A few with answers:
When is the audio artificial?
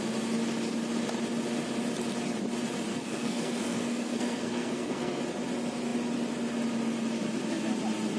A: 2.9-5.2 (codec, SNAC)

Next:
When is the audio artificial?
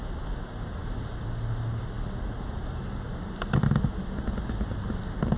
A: none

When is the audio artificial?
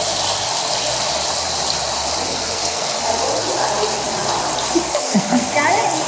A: 2.3-3.0 (codec, SNAC); 4.9-5.5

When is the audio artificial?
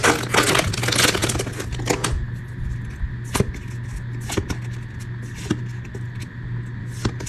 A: none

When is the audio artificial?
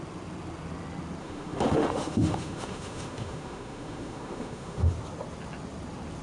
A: 1.2-4.9 (autoencoder, DAC-VAE)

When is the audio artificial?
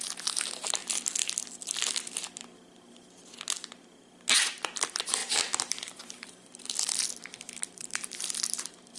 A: 0.0-0.8 (vocoder, BigVGAN v2); 4.4-9.0